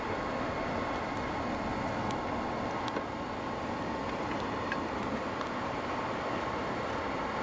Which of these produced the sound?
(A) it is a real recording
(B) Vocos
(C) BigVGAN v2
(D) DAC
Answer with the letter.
A